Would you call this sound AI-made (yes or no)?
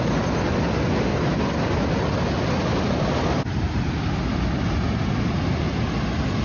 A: no